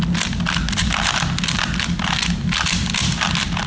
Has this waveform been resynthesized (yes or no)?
no